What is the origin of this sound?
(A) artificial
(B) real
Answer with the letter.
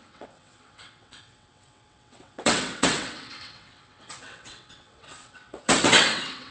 A